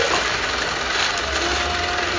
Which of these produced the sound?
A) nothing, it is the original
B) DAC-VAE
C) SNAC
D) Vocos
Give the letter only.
A